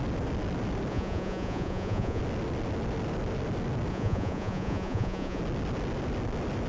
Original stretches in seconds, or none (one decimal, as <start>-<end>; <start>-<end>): 0.0-0.9; 2.2-3.9; 5.4-6.7